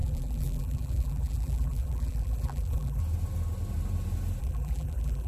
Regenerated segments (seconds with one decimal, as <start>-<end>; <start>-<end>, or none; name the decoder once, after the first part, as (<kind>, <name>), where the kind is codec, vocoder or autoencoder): 0.0-3.0 (vocoder, BigVGAN v2); 4.4-5.3